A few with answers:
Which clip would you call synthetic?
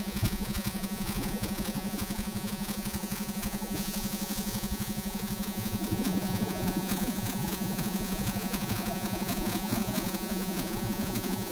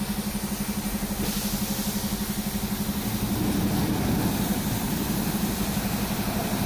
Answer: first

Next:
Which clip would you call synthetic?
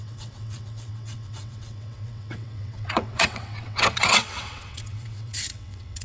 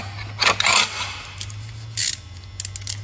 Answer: first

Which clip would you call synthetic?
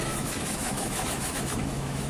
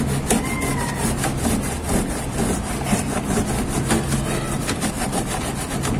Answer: first